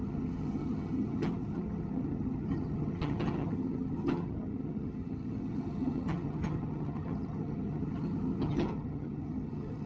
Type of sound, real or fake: fake